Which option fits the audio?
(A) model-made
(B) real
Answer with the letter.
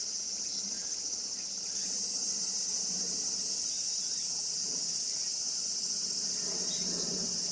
B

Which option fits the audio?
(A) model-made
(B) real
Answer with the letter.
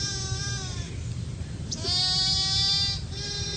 B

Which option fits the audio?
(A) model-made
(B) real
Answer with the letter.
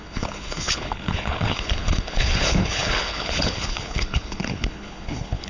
A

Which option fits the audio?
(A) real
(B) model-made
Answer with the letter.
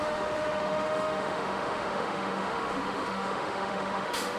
B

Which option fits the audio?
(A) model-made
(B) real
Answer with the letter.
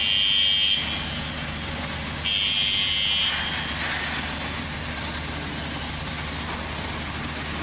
B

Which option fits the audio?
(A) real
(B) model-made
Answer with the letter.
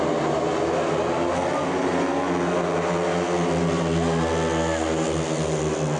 A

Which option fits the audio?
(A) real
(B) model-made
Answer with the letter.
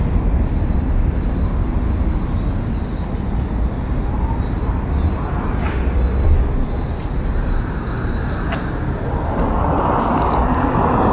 A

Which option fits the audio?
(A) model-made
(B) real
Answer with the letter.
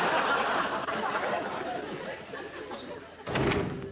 B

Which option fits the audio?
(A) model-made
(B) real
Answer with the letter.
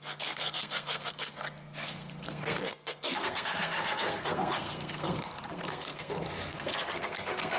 A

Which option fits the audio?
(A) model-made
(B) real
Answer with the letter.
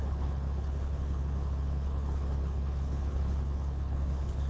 A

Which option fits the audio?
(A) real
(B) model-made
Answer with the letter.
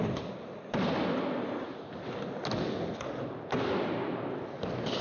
A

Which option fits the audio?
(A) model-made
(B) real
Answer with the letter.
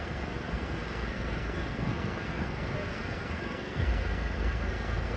A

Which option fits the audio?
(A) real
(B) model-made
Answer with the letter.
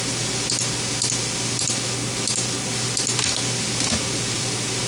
A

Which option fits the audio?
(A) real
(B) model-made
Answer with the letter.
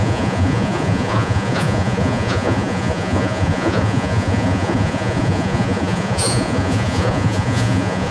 B